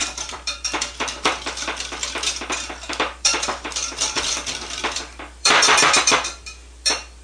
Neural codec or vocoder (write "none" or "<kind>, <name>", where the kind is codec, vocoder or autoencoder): vocoder, BigVGAN v2